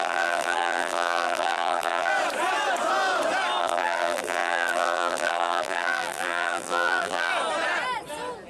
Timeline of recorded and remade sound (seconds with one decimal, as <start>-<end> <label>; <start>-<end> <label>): 0.0-2.1 remade; 2.1-3.6 recorded; 3.6-7.3 remade; 7.3-8.5 recorded